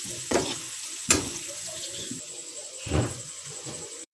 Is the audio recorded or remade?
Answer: remade